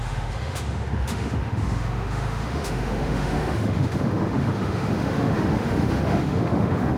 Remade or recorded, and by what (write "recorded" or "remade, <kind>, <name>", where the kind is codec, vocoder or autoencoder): remade, autoencoder, DAC-VAE